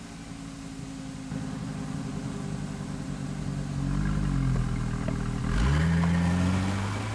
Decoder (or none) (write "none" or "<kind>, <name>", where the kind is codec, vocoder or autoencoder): none